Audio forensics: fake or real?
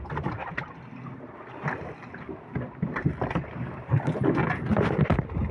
real